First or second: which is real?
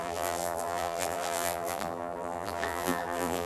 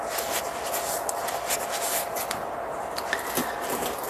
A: second